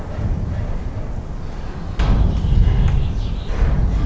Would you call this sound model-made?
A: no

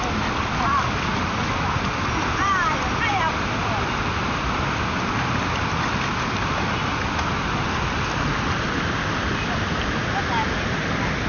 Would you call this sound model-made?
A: no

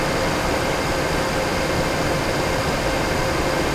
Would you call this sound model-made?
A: no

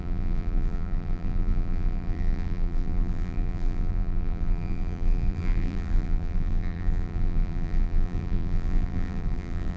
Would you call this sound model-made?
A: yes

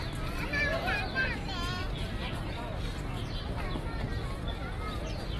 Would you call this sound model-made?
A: no